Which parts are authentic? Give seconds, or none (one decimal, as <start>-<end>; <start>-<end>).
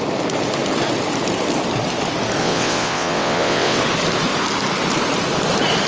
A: 0.0-2.4; 3.8-5.9